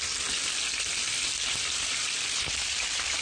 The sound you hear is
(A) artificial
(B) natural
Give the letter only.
B